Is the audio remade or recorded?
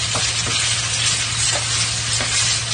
recorded